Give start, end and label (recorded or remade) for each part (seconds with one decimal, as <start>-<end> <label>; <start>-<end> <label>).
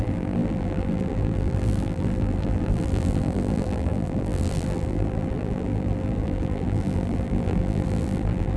0.0-8.6 remade